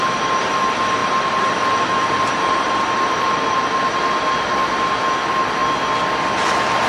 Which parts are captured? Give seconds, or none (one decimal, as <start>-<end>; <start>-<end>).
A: 0.0-1.0; 3.6-6.9